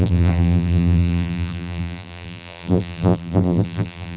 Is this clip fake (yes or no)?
yes